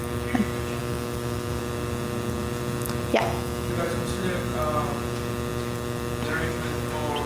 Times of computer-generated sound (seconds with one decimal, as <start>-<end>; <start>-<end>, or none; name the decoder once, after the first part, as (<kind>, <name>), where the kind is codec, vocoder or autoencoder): 0.8-1.6 (autoencoder, DAC-VAE); 3.1-3.7